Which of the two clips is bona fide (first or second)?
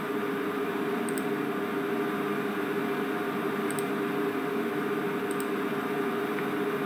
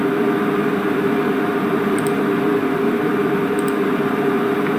first